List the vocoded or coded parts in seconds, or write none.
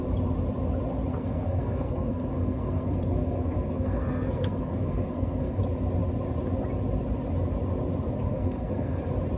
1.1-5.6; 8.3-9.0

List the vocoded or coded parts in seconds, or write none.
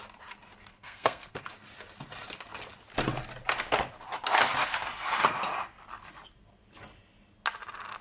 0.7-1.4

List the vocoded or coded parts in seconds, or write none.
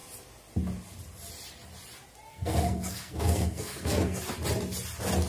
2.3-4.2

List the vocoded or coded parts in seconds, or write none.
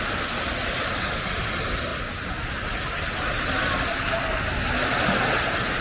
none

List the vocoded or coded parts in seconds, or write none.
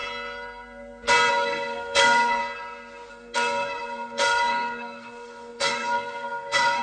1.3-2.4; 3.1-6.8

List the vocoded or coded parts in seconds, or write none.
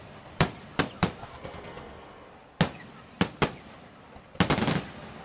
1.3-2.3